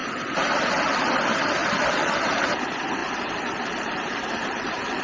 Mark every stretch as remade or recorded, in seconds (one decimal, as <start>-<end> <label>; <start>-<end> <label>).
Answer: 0.0-0.5 remade; 0.5-1.6 recorded; 1.6-2.6 remade; 2.6-3.0 recorded; 3.0-5.0 remade